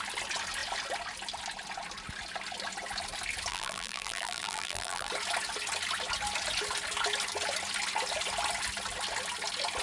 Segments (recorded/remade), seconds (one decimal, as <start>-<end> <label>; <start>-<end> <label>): 0.0-3.5 recorded; 3.5-5.1 remade; 5.1-9.8 recorded